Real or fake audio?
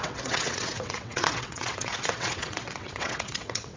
fake